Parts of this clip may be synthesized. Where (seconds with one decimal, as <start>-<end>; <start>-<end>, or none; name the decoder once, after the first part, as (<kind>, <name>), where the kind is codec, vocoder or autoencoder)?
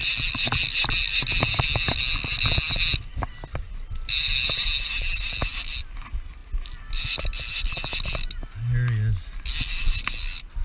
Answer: none